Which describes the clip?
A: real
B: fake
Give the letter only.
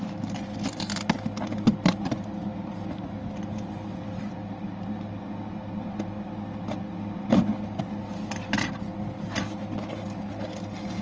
A